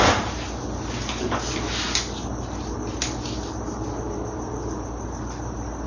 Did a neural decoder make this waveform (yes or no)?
no